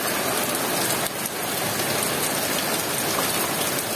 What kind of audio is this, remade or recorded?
recorded